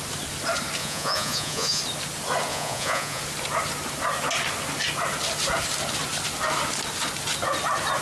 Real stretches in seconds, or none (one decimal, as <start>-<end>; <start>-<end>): 0.0-0.8; 1.8-2.5; 3.2-8.0